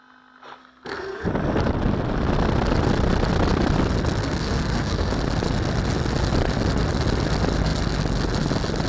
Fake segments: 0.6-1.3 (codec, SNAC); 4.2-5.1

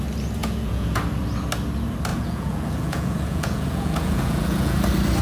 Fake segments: 0.4-1.0 (vocoder, Vocos); 2.1-4.8

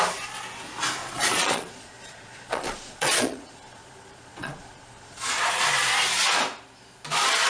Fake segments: 1.0-5.5 (vocoder, Vocos)

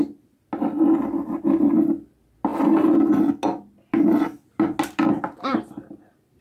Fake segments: none

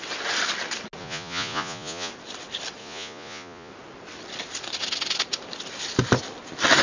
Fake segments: 1.0-2.1 (vocoder, Vocos); 2.8-3.7

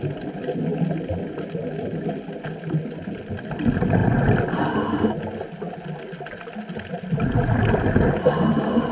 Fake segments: none

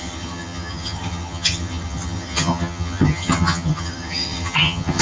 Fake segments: 0.0-5.0 (vocoder, HiFi-GAN)

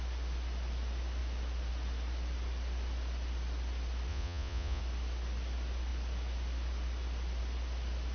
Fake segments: 4.1-4.8 (vocoder, Vocos)